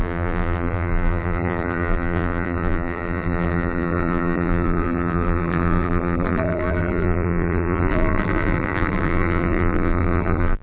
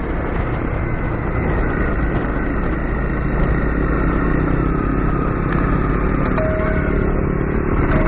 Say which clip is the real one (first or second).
second